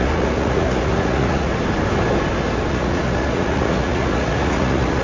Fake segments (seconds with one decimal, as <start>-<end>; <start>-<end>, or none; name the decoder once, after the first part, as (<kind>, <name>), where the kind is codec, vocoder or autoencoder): 0.0-1.5 (vocoder, Vocos); 2.7-5.0